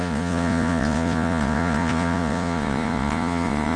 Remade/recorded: remade